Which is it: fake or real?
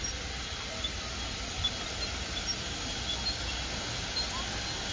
real